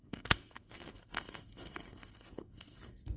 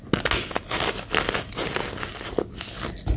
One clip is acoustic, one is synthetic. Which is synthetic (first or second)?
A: first